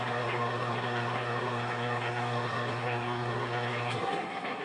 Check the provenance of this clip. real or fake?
fake